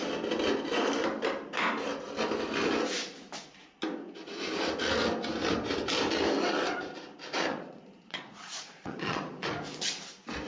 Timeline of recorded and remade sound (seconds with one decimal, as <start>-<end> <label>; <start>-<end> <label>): 0.0-7.5 recorded; 7.5-9.5 remade; 9.5-10.5 recorded